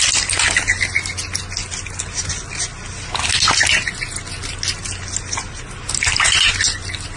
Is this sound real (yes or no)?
yes